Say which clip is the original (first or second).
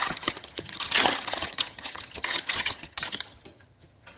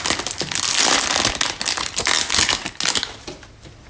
second